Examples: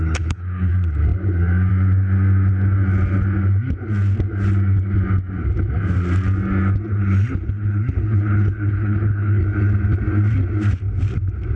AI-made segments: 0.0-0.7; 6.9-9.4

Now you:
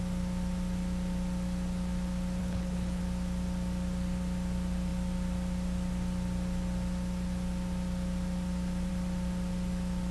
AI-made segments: 2.4-3.0

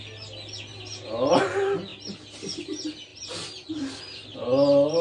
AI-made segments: none